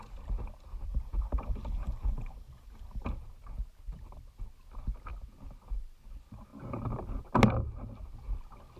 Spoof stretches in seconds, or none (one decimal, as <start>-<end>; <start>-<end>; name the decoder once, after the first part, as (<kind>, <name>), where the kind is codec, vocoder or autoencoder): 0.9-3.1 (vocoder, BigVGAN v2)